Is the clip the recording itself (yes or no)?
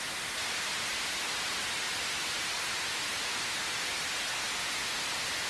yes